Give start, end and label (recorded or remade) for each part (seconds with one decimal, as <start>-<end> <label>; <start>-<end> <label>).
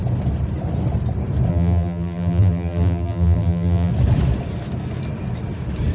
0.0-1.5 recorded; 1.5-3.9 remade; 3.9-5.9 recorded